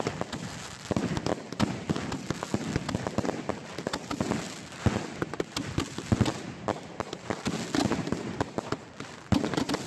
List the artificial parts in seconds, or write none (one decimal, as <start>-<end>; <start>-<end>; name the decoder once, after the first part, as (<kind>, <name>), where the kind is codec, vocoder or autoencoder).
none